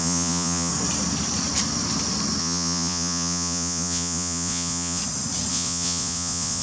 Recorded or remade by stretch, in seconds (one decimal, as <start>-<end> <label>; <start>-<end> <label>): 0.0-0.7 remade; 0.7-2.4 recorded; 2.4-5.0 remade; 5.0-5.5 recorded; 5.5-6.6 remade